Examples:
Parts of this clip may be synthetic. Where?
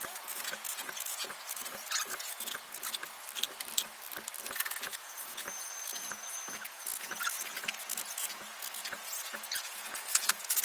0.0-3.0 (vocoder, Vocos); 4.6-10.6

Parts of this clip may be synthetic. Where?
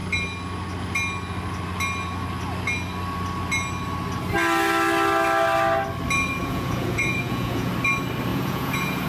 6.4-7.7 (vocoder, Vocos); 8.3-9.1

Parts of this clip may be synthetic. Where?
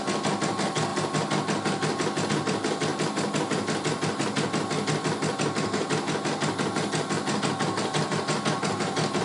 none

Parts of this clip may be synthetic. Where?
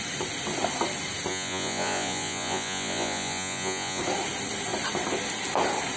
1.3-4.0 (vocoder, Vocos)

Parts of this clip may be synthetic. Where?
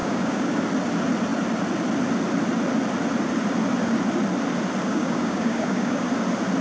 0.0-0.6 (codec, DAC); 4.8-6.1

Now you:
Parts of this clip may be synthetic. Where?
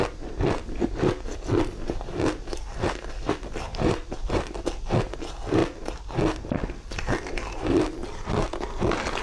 none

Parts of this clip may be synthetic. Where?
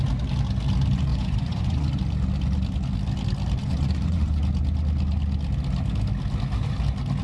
1.1-1.9 (vocoder, Vocos); 3.6-4.4